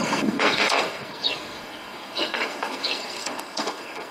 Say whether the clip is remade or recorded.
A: remade